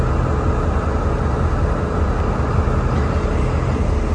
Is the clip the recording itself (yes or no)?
yes